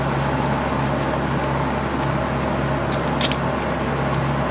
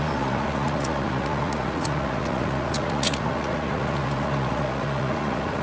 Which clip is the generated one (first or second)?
second